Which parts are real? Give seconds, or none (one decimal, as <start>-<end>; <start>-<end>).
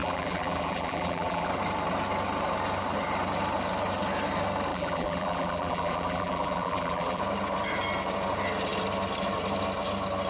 1.5-4.7; 7.2-10.3